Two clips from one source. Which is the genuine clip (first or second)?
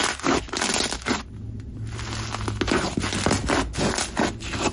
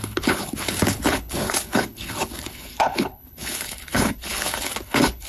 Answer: first